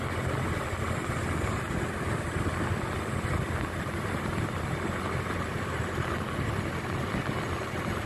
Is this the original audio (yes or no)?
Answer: yes